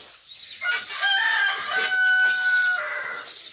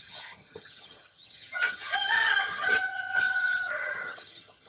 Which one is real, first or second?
first